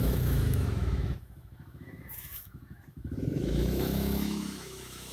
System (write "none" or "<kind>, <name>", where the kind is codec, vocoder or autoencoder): autoencoder, DAC-VAE